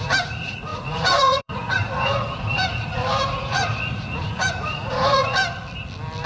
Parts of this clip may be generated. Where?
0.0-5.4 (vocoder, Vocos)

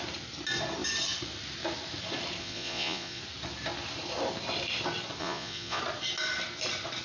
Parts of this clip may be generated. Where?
2.4-3.2 (vocoder, Vocos); 5.2-5.8

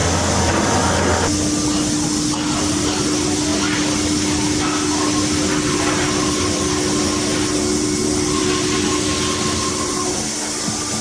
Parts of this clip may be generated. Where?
none

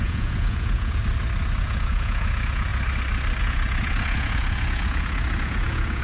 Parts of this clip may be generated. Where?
0.0-1.0 (vocoder, Vocos); 1.6-2.7; 3.4-6.0

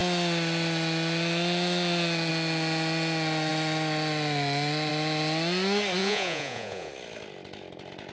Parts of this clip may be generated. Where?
6.0-6.9 (vocoder, Vocos)

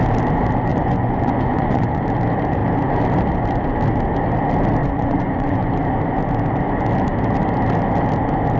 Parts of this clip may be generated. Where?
0.7-2.0 (vocoder, Vocos); 4.8-5.7